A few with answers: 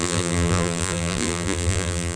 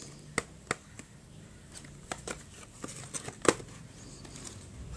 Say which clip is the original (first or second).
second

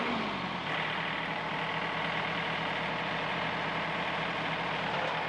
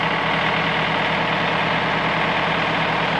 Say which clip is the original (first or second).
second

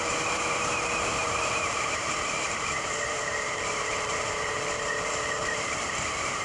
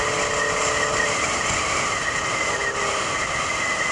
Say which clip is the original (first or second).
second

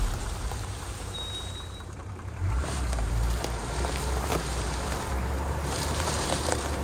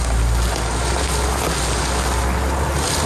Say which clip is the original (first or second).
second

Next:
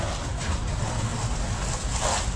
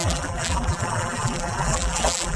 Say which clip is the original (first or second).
first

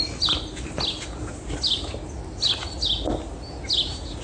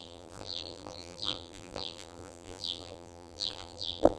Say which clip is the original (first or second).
first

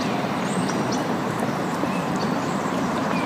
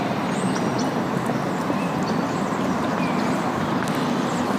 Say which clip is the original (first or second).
second